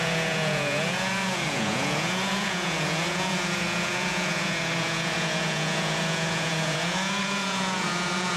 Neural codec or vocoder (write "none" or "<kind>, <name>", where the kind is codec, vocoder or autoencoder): vocoder, Vocos